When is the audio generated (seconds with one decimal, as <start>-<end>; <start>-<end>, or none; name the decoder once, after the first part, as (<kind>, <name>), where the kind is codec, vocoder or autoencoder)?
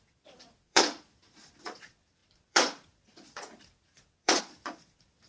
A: 0.0-5.3 (vocoder, Vocos)